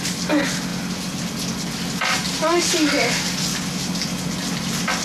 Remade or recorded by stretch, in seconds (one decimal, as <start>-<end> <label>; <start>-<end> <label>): 0.0-5.0 recorded

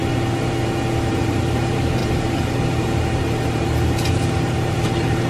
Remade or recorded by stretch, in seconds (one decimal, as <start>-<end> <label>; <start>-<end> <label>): 0.0-1.0 recorded; 1.0-5.3 remade